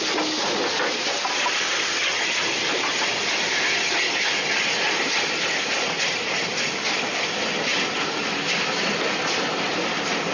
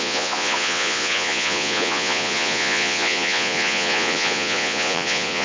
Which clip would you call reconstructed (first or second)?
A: second